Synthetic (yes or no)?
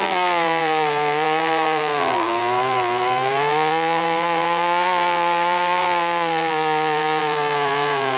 yes